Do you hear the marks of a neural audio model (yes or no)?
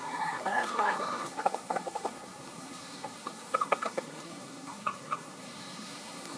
yes